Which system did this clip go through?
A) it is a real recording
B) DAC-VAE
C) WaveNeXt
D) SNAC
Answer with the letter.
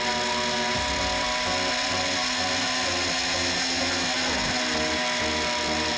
A